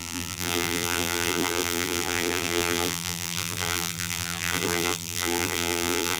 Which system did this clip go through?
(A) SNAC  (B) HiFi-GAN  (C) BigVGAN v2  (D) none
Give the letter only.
C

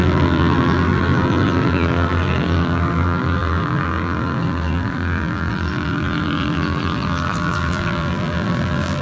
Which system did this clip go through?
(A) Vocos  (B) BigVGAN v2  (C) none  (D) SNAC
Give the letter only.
B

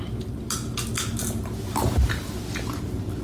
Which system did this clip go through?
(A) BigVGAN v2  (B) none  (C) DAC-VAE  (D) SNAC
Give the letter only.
B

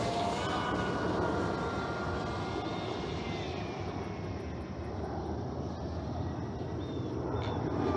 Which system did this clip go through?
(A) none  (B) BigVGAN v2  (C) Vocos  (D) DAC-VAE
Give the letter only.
A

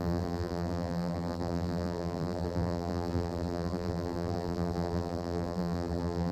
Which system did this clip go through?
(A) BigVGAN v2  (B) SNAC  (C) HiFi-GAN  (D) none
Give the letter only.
A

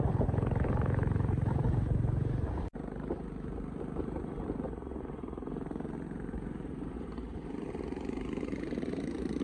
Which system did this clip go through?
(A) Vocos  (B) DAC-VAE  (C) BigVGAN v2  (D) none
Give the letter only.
C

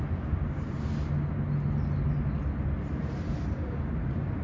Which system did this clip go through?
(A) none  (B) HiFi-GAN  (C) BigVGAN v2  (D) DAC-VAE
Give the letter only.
A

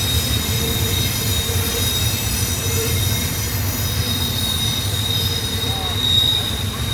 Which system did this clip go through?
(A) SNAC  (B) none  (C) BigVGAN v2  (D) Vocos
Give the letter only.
C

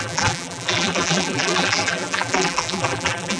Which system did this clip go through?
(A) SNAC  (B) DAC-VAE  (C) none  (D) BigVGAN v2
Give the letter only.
D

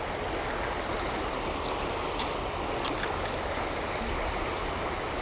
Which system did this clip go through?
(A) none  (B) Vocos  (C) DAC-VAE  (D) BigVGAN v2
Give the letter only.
A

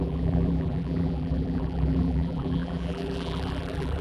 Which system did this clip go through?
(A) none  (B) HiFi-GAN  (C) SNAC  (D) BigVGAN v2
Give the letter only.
D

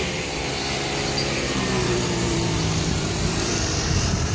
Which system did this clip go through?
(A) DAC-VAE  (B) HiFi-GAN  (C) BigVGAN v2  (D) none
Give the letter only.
C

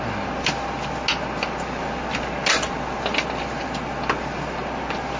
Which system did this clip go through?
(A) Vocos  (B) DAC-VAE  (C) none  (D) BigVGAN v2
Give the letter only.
C